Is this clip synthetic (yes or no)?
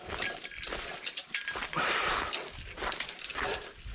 yes